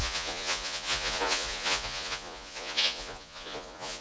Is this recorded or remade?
remade